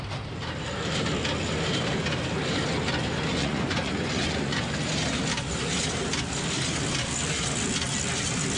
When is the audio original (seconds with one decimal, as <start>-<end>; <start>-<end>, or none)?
0.0-3.4; 4.6-8.6